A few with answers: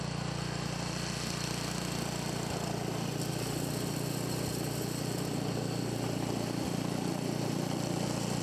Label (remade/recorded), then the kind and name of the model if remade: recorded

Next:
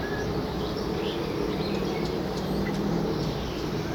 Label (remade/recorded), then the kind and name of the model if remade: remade, vocoder, BigVGAN v2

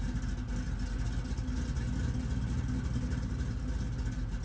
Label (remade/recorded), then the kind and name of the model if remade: recorded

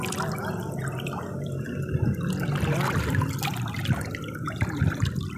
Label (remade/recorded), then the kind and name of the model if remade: remade, vocoder, BigVGAN v2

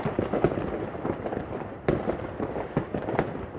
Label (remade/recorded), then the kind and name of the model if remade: recorded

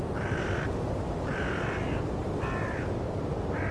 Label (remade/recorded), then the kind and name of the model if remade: remade, vocoder, BigVGAN v2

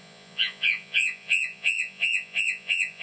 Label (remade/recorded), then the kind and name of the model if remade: remade, vocoder, Vocos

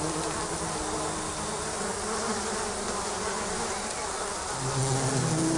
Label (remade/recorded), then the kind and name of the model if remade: recorded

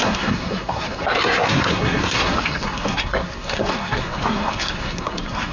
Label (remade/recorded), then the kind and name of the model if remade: remade, codec, SNAC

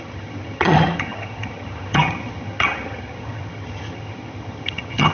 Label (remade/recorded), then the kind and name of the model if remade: remade, vocoder, HiFi-GAN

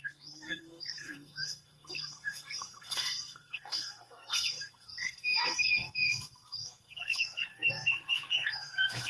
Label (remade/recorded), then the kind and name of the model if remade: remade, codec, SNAC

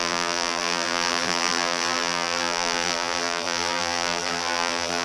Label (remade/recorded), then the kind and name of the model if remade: remade, vocoder, BigVGAN v2